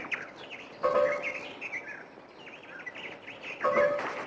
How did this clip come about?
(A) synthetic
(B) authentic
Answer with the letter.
B